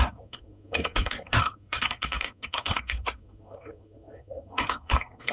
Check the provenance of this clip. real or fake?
fake